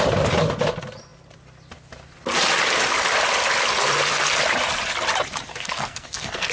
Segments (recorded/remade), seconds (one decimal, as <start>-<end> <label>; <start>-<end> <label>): 0.0-5.5 recorded; 5.5-6.5 remade